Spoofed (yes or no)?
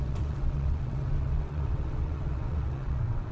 yes